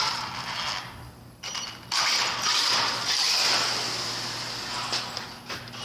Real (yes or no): yes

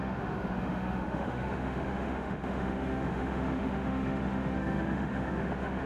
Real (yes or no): no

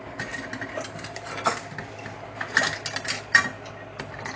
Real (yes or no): yes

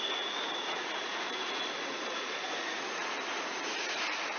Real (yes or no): no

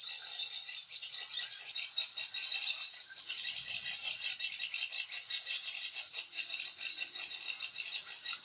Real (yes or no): yes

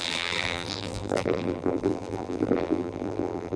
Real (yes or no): no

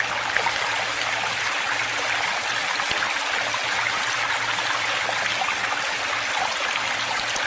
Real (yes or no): yes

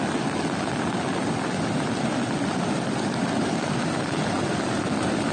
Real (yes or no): yes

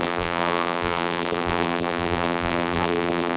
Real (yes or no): no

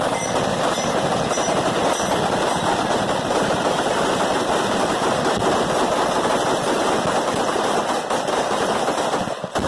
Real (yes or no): yes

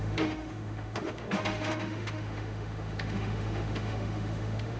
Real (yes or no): no